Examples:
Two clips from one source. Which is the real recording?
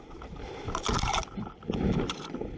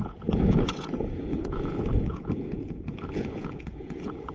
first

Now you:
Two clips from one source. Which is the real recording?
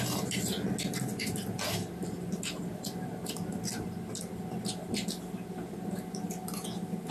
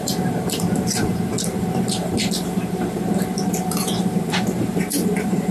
first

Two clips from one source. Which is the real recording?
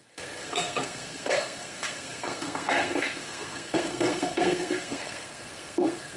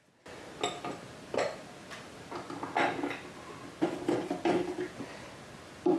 second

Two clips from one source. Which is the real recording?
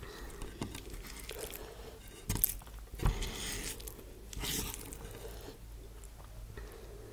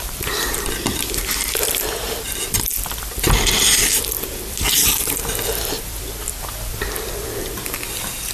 first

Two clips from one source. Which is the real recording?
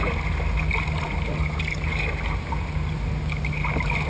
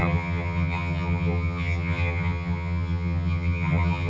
first